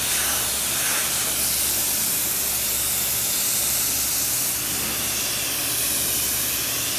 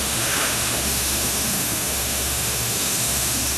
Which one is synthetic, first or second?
second